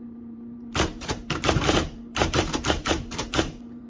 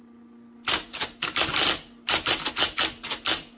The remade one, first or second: first